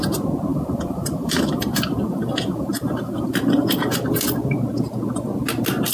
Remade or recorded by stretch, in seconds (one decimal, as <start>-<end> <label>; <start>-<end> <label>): 0.0-0.5 recorded; 0.5-4.0 remade; 4.0-5.9 recorded